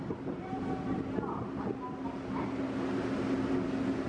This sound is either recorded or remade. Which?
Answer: recorded